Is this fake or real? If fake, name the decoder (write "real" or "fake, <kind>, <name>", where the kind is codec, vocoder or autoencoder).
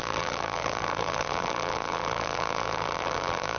fake, vocoder, BigVGAN v2